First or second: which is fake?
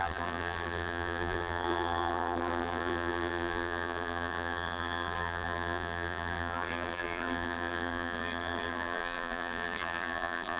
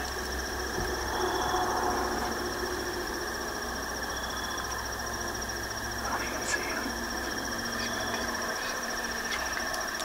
first